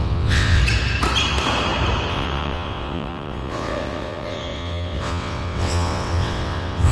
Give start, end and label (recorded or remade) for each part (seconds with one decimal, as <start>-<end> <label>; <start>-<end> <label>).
0.0-0.6 remade; 0.6-2.1 recorded; 2.1-6.9 remade